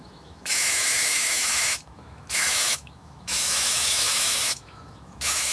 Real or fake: fake